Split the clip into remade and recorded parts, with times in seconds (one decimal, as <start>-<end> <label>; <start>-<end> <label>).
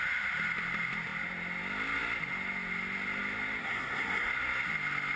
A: 0.0-3.6 recorded; 3.6-4.3 remade; 4.3-5.2 recorded